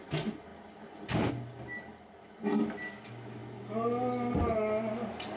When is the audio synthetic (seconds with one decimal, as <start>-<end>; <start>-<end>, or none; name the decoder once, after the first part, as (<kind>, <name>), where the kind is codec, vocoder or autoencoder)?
none